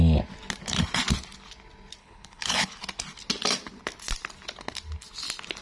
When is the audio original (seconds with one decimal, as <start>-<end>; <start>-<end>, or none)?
0.0-2.0; 2.8-5.6